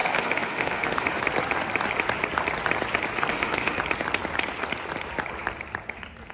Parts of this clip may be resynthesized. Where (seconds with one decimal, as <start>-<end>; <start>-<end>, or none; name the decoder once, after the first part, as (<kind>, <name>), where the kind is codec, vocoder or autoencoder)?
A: 0.0-1.2 (autoencoder, DAC-VAE); 3.3-3.8